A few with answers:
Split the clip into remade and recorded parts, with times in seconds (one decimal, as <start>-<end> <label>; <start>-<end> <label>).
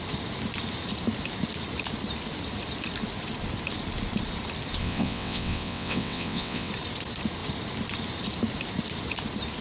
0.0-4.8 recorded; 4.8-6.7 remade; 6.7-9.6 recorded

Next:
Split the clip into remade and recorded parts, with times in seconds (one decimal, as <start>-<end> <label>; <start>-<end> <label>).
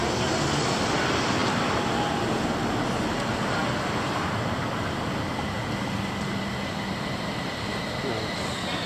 0.0-8.9 recorded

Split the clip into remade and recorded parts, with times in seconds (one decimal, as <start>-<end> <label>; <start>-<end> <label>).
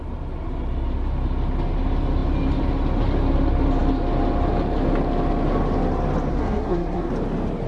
0.0-6.3 recorded; 6.3-7.1 remade; 7.1-7.7 recorded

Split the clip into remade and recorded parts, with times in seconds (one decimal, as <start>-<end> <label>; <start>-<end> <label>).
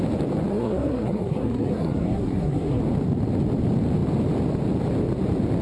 0.0-0.5 recorded; 0.5-2.8 remade; 2.8-5.6 recorded